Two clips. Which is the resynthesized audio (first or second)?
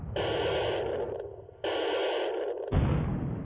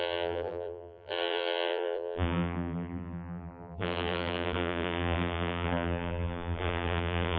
second